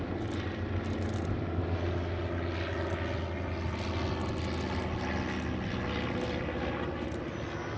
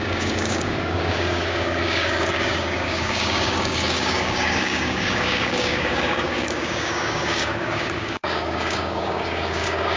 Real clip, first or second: first